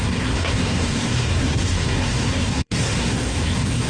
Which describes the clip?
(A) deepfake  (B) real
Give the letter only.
A